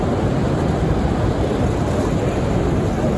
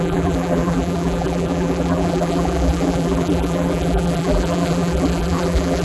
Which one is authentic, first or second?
first